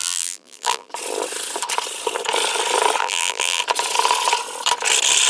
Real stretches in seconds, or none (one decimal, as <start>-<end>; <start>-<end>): 0.9-3.0; 3.6-5.3